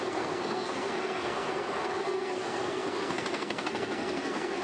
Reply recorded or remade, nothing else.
remade